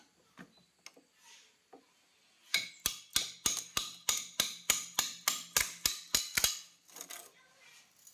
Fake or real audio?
real